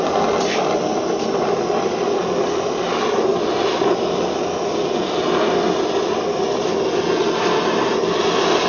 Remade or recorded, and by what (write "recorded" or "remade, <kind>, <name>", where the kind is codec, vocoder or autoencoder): recorded